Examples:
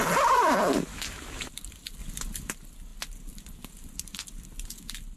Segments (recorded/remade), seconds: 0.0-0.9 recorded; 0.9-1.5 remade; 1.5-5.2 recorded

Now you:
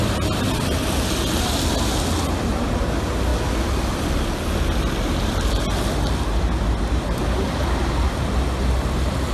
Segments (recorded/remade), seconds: 0.0-9.3 recorded